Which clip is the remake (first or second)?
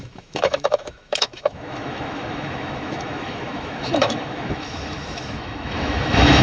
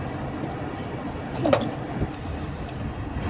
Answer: first